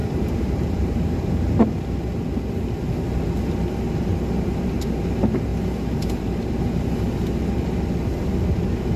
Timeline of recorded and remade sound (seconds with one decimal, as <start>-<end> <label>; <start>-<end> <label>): 0.0-1.5 remade; 1.5-5.5 recorded; 5.5-6.5 remade; 6.5-9.0 recorded